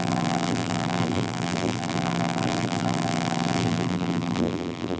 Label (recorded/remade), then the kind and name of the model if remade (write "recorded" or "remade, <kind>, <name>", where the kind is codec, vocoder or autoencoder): remade, vocoder, BigVGAN v2